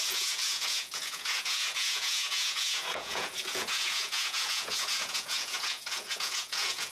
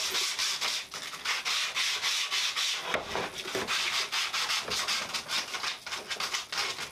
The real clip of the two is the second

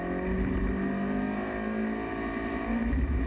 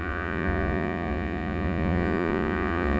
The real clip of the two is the first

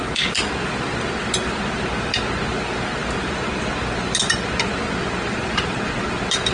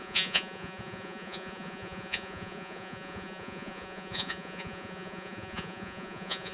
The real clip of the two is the first